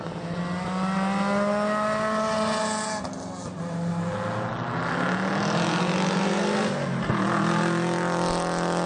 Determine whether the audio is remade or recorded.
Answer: recorded